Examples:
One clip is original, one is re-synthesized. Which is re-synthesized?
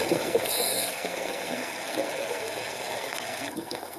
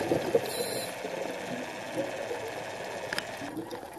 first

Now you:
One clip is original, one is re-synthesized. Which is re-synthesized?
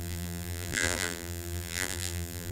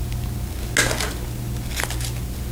first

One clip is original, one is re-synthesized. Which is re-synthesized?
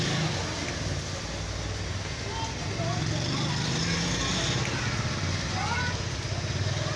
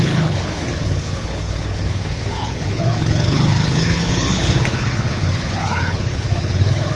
second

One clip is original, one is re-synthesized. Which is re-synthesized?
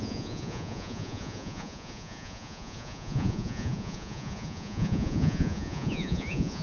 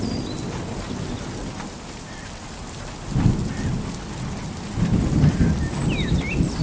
first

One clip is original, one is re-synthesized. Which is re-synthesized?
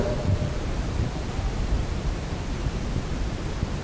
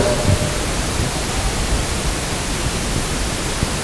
first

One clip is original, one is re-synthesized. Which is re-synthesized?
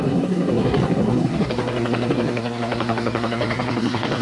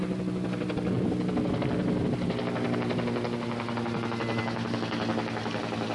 first